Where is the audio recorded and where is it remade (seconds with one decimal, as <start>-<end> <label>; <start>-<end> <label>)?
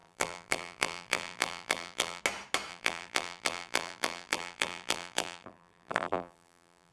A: 0.0-2.2 remade; 2.2-2.7 recorded; 2.7-6.9 remade